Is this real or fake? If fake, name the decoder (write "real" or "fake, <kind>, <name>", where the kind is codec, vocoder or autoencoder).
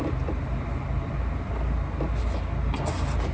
real